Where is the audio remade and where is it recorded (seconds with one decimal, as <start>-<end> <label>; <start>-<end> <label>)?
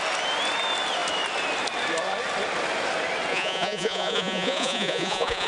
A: 0.0-3.3 recorded; 3.3-5.5 remade